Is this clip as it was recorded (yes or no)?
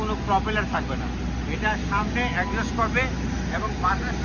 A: yes